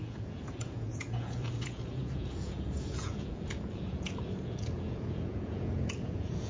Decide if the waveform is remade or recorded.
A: remade